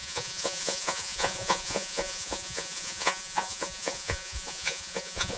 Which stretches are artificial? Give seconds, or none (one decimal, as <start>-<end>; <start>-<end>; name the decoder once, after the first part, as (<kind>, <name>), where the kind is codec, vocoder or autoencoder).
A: 0.0-5.4 (vocoder, Vocos)